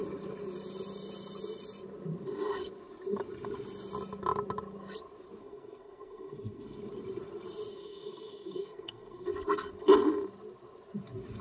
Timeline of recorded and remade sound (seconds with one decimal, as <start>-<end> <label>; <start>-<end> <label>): 0.0-5.4 recorded; 5.4-6.8 remade; 6.8-7.7 recorded; 7.7-9.3 remade; 9.3-11.4 recorded